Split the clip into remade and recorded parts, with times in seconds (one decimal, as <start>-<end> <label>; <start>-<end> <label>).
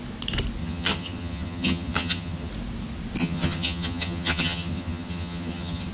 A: 0.0-0.6 recorded; 0.6-2.5 remade; 2.5-3.2 recorded; 3.2-5.9 remade